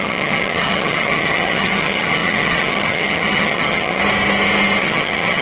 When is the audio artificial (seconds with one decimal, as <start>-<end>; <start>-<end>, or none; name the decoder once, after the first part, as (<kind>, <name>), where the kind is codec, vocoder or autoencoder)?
0.0-4.0 (vocoder, HiFi-GAN); 4.8-5.4